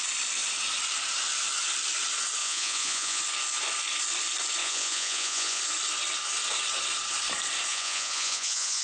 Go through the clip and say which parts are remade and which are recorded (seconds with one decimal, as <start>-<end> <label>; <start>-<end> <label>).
0.0-2.4 recorded; 2.4-3.2 remade; 3.2-4.6 recorded; 4.6-5.6 remade; 5.6-7.7 recorded; 7.7-8.8 remade